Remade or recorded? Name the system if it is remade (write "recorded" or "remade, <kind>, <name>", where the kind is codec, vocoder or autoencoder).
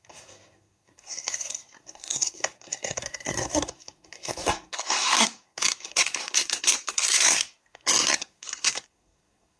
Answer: remade, codec, SNAC